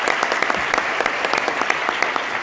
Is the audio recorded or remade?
remade